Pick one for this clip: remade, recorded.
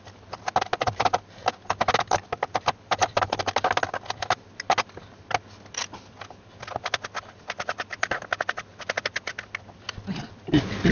recorded